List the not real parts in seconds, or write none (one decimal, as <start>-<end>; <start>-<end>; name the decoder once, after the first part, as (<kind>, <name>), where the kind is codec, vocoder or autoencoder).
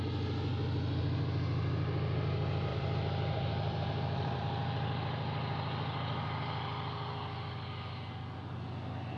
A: 2.7-4.4 (vocoder, BigVGAN v2)